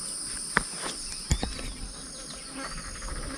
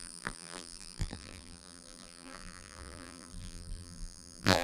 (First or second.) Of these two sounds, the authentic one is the first